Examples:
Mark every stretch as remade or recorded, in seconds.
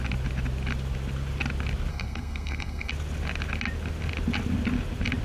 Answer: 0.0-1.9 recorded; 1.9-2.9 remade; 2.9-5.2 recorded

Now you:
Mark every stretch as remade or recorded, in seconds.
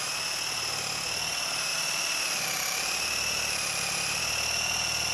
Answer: 0.0-1.7 recorded; 1.7-4.2 remade; 4.2-5.1 recorded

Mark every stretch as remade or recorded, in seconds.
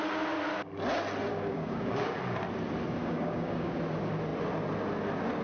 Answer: 0.0-1.3 recorded; 1.3-2.2 remade; 2.2-3.0 recorded; 3.0-3.8 remade; 3.8-5.4 recorded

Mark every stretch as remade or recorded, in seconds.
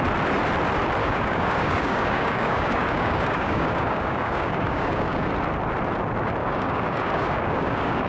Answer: 0.0-1.0 recorded; 1.0-5.3 remade; 5.3-6.4 recorded; 6.4-8.1 remade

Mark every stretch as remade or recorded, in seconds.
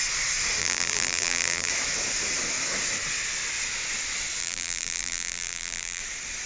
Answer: 0.0-0.6 recorded; 0.6-1.7 remade; 1.7-4.4 recorded; 4.4-6.0 remade; 6.0-6.5 recorded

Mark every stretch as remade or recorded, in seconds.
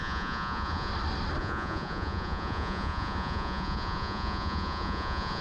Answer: 0.0-0.9 remade; 0.9-1.4 recorded; 1.4-5.4 remade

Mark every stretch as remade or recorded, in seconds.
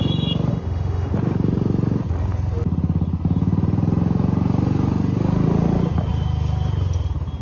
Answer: 0.0-0.5 recorded; 0.5-1.1 remade; 1.1-7.4 recorded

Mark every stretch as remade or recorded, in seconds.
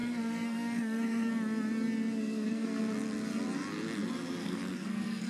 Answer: 0.0-1.3 remade; 1.3-2.2 recorded; 2.2-2.8 remade; 2.8-4.4 recorded; 4.4-5.3 remade